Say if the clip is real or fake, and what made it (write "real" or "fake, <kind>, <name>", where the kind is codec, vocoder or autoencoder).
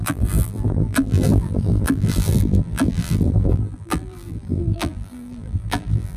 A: fake, vocoder, BigVGAN v2